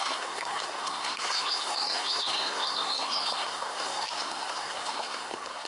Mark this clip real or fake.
fake